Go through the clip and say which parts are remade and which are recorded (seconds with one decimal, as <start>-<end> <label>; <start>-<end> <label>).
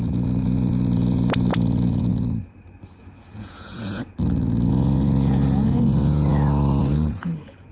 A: 0.0-2.1 remade; 2.1-3.0 recorded; 3.0-4.1 remade; 4.1-4.7 recorded; 4.7-6.3 remade; 6.3-6.8 recorded; 6.8-7.7 remade